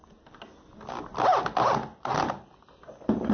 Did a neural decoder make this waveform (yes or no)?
no